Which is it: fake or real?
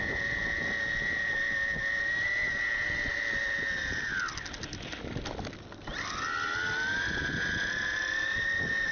real